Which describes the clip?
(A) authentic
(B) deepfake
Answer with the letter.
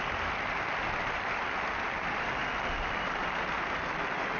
A